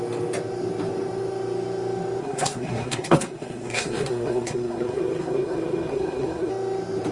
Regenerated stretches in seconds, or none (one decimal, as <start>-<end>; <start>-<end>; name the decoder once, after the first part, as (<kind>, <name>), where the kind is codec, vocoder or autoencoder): 2.2-6.5 (codec, SNAC)